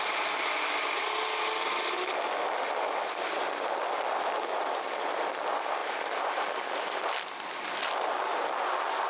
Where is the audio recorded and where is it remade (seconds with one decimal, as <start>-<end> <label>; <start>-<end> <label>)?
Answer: 0.0-5.8 recorded; 5.8-8.2 remade; 8.2-9.1 recorded